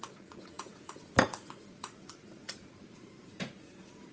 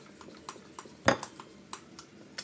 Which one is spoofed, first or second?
first